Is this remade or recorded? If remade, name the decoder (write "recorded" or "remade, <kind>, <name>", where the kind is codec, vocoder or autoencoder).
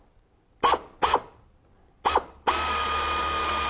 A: recorded